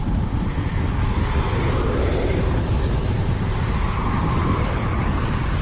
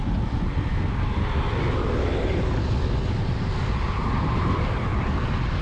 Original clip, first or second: second